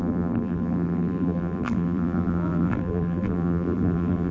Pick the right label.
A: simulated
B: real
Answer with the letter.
A